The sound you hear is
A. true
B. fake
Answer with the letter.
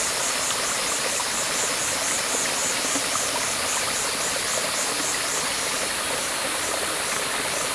A